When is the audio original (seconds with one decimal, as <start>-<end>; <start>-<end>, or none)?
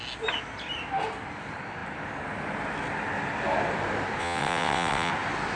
0.0-4.2; 5.1-5.6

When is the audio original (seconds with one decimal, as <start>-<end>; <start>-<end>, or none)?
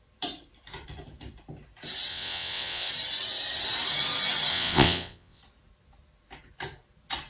0.0-2.1; 2.9-4.5; 5.4-7.3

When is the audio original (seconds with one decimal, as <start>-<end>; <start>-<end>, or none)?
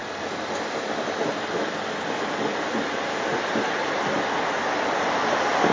0.0-5.7